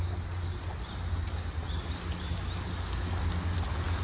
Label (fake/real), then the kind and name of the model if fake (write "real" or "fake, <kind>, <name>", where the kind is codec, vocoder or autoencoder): real